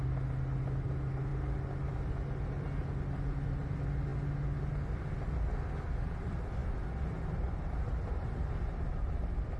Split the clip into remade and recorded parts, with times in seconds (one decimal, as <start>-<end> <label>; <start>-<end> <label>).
0.0-9.6 recorded